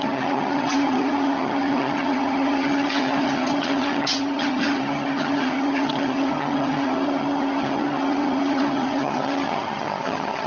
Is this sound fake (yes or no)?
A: yes